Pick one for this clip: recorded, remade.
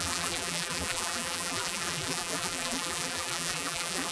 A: remade